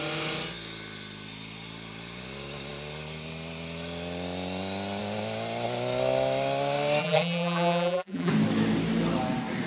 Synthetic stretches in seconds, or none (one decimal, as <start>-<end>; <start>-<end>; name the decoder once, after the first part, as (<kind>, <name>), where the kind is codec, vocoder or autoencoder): 7.0-8.3 (vocoder, BigVGAN v2)